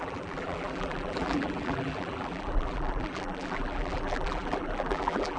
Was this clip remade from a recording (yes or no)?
yes